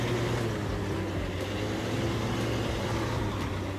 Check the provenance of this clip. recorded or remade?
recorded